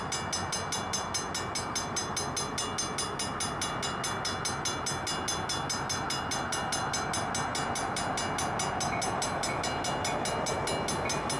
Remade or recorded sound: recorded